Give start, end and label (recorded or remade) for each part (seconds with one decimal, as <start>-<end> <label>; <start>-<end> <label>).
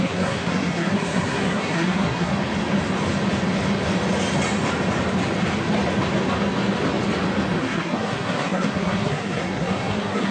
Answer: 0.0-2.3 remade; 2.3-7.6 recorded; 7.6-10.3 remade